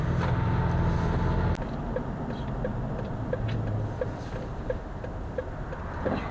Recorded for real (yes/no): yes